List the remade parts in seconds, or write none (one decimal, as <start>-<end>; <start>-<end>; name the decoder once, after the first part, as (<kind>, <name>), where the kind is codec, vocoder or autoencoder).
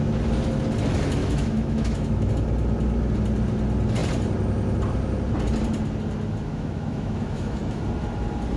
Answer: 1.2-2.3 (autoencoder, DAC-VAE); 6.5-7.8